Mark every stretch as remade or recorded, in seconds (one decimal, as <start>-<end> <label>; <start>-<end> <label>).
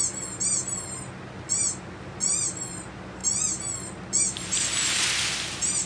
0.0-5.9 recorded